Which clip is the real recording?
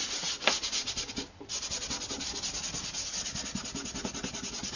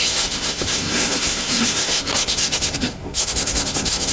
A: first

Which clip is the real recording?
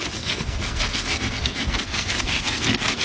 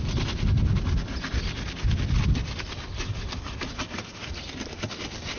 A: second